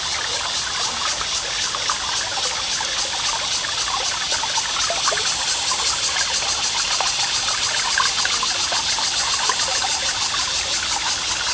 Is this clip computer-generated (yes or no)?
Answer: no